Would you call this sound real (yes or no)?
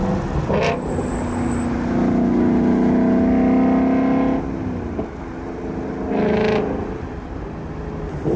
yes